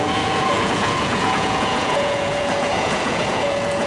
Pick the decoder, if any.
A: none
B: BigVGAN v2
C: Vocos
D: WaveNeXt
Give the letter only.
C